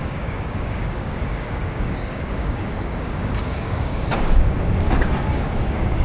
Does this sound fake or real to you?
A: fake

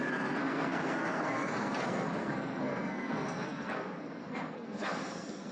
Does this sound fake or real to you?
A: fake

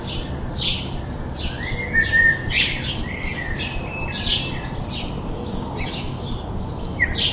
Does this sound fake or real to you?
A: real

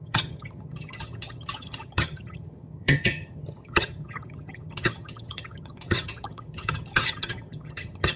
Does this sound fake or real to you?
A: fake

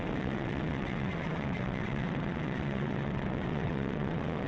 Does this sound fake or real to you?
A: fake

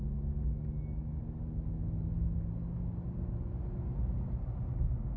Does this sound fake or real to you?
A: real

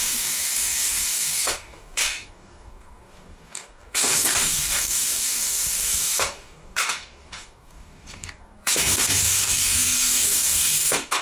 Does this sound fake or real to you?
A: fake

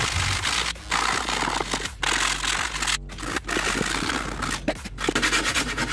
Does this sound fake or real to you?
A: real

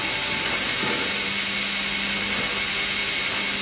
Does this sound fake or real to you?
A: real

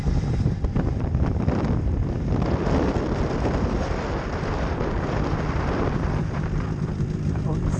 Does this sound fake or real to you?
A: fake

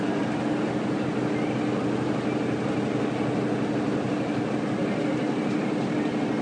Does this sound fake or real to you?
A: real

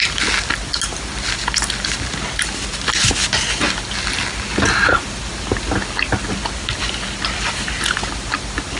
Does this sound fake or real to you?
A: real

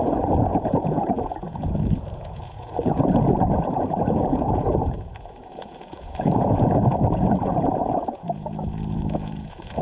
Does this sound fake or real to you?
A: fake